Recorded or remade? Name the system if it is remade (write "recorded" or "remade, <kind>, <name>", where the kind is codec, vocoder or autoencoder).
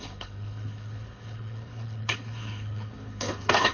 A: remade, codec, HILCodec